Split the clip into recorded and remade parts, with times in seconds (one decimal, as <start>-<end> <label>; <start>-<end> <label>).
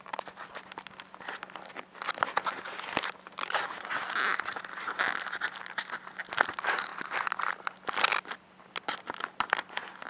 0.0-10.1 recorded